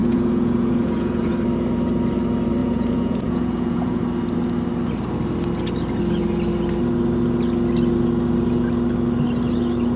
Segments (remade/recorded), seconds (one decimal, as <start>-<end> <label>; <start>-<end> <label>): 0.0-1.3 remade; 1.3-2.6 recorded; 2.6-4.0 remade; 4.0-10.0 recorded